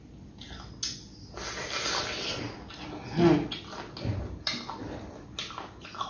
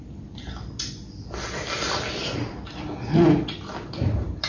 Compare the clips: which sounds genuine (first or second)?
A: first